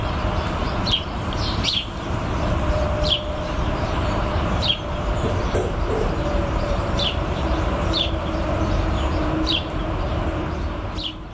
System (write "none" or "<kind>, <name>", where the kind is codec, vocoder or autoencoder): vocoder, BigVGAN v2